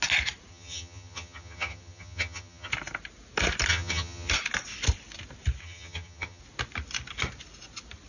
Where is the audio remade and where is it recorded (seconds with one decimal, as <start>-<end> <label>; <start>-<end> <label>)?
0.0-0.5 recorded; 0.5-2.7 remade; 2.7-3.7 recorded; 3.7-4.3 remade; 4.3-5.6 recorded; 5.6-6.4 remade; 6.4-8.1 recorded